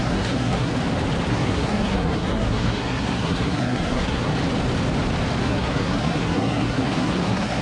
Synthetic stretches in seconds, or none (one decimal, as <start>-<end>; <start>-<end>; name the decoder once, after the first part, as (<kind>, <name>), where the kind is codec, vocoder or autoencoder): 0.0-0.7 (codec, SNAC); 1.3-4.3; 5.4-7.6